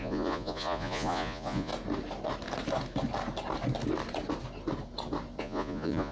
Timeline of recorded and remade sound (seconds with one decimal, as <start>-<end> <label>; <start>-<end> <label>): 0.0-1.7 remade; 1.7-5.4 recorded; 5.4-6.1 remade